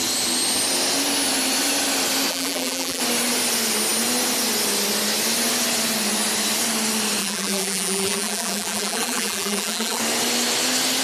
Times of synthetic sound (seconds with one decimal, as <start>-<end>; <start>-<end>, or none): 2.3-3.0; 7.2-10.0